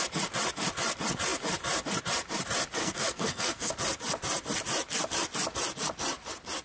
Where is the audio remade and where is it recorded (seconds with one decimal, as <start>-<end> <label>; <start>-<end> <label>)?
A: 0.0-2.8 recorded; 2.8-3.7 remade; 3.7-6.6 recorded